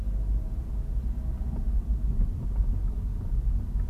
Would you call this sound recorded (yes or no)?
yes